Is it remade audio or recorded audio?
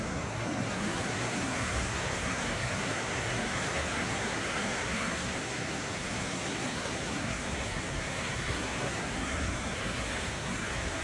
remade